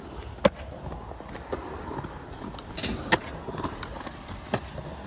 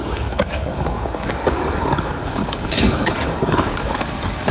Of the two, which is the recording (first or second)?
first